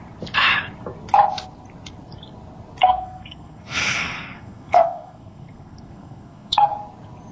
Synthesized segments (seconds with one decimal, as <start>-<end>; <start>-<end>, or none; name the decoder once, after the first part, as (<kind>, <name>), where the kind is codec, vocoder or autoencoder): 2.8-6.7 (codec, SNAC)